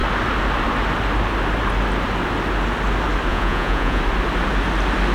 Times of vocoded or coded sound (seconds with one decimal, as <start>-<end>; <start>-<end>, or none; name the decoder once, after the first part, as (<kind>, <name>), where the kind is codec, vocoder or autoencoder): 3.3-4.0 (vocoder, Vocos)